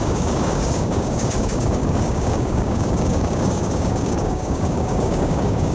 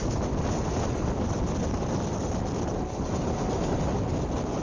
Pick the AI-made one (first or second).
first